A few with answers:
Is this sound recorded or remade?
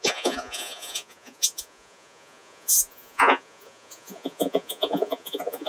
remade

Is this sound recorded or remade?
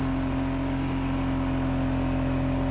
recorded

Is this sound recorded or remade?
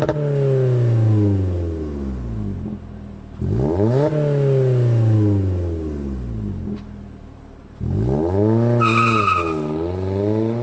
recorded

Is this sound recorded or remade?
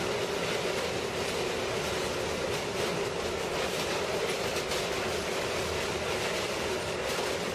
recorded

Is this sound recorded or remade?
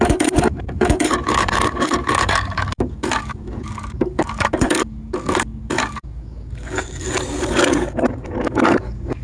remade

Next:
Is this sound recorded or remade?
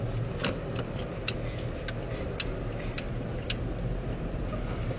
recorded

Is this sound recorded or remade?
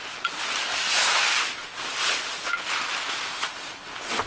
recorded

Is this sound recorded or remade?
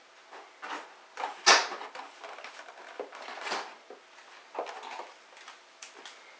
recorded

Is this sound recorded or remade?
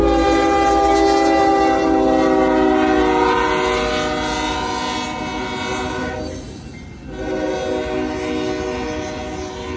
recorded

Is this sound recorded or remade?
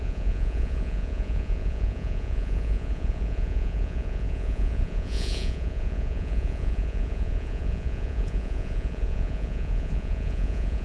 remade